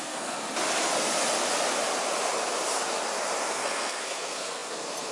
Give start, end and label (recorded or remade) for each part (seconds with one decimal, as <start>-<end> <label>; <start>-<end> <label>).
0.0-0.4 remade; 0.4-3.5 recorded; 3.5-5.1 remade